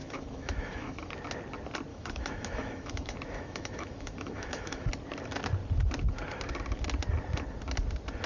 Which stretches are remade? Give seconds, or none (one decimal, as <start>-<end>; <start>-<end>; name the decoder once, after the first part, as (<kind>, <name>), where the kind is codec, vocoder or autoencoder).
0.0-1.1 (autoencoder, DAC-VAE); 1.9-4.9